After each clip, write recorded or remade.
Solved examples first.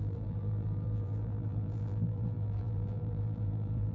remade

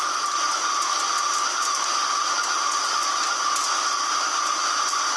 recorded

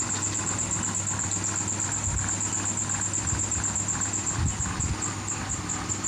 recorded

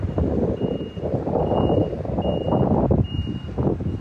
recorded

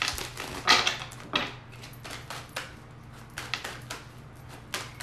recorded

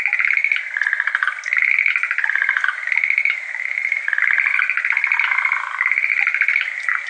recorded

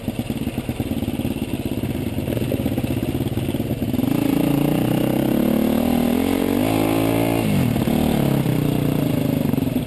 recorded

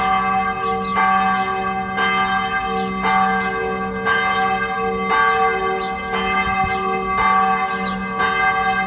recorded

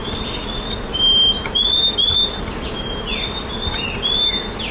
recorded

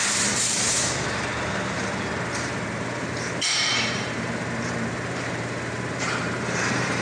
remade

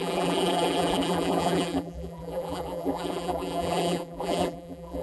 remade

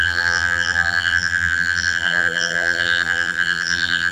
remade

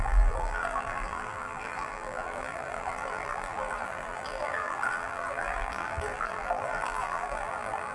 remade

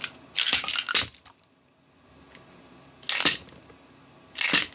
recorded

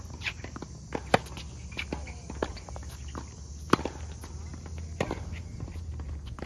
recorded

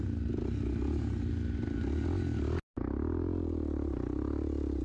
recorded